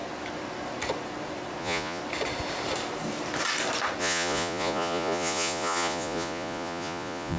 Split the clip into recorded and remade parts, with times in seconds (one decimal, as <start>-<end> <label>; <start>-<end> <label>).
0.0-1.6 recorded; 1.6-2.0 remade; 2.0-4.0 recorded; 4.0-7.4 remade